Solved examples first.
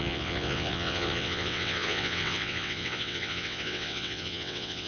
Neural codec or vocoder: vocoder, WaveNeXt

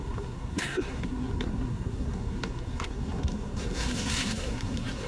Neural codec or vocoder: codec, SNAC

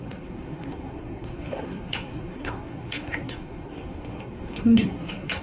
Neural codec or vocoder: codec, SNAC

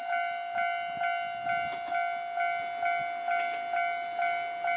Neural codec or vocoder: none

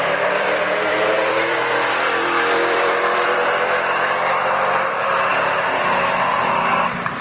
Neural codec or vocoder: vocoder, BigVGAN v2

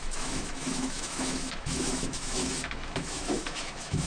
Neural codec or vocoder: autoencoder, DAC-VAE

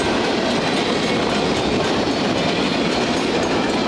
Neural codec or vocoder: none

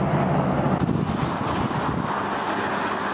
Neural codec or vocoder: none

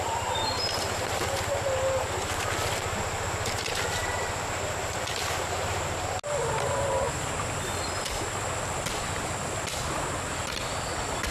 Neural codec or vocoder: none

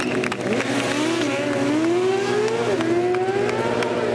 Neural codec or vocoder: none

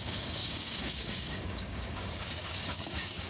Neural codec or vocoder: codec, DAC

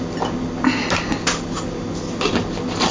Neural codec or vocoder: none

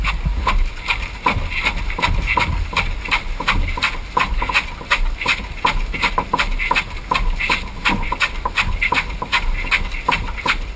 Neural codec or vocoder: none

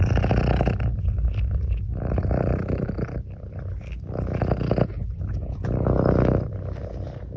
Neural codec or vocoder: none